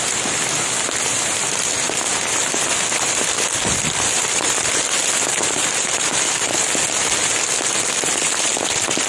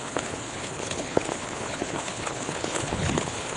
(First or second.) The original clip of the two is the first